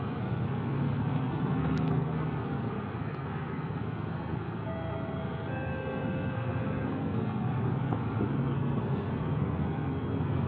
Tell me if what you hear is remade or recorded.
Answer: remade